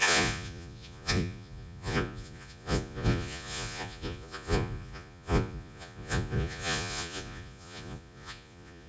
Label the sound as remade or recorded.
remade